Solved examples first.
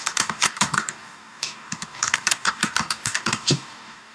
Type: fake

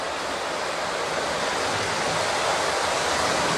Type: real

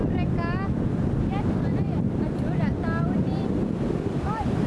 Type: real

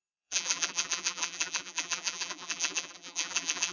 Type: fake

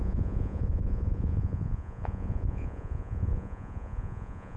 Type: fake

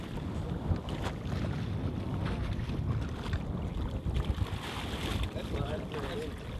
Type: real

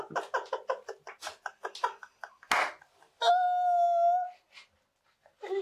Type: real